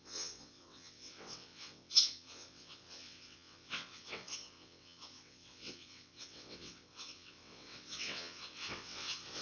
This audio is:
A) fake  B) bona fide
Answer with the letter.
A